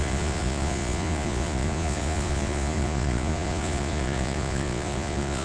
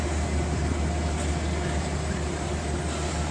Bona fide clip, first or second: second